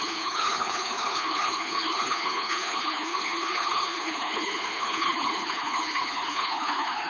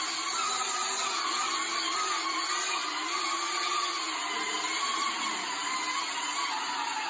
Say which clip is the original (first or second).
second